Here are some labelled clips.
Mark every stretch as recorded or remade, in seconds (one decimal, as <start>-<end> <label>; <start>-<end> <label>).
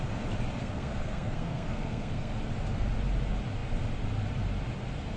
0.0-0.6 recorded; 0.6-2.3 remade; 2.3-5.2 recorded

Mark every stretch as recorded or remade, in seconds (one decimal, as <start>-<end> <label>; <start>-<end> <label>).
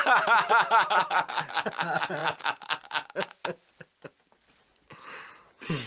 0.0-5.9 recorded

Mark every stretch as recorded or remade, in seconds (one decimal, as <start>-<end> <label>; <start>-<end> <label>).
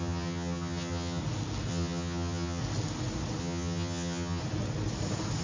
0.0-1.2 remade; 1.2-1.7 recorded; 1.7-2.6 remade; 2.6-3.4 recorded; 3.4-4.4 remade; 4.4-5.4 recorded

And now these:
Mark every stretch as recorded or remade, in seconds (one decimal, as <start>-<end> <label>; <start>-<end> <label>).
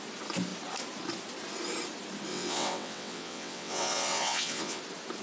0.0-2.3 recorded; 2.3-4.8 remade; 4.8-5.2 recorded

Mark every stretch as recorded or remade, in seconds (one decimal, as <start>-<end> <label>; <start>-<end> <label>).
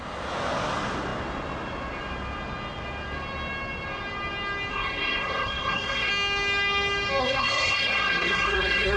0.0-4.7 recorded; 4.7-6.1 remade; 6.1-7.2 recorded; 7.2-9.0 remade